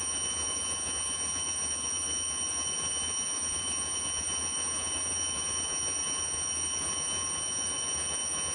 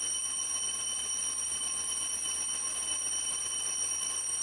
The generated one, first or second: first